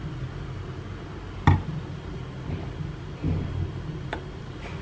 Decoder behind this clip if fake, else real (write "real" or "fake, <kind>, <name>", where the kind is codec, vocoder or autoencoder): real